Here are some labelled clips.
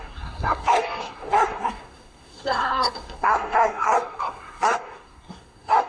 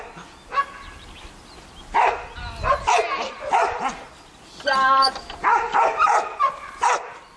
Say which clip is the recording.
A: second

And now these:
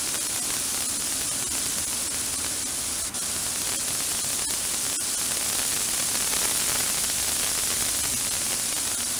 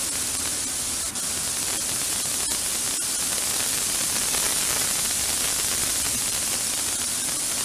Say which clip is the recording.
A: first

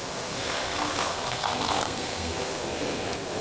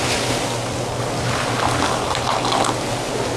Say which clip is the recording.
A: second